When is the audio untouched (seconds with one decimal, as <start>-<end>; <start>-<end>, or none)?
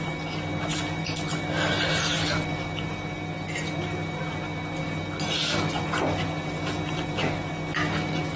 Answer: 0.0-8.4